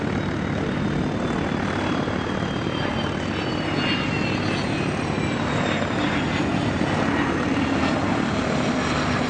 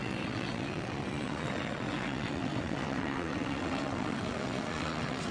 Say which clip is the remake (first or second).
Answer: second